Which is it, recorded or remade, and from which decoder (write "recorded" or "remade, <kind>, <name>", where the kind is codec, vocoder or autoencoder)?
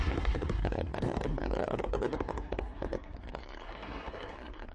remade, codec, SNAC